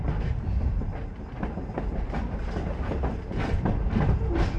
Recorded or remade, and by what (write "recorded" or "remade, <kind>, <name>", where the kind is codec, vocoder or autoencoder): recorded